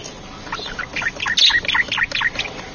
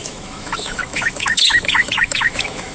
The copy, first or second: second